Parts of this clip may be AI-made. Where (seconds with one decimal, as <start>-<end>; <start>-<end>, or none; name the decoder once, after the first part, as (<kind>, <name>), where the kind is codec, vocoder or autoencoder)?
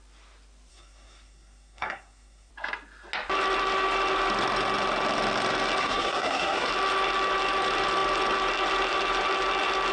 0.7-2.5 (codec, SNAC); 5.8-6.7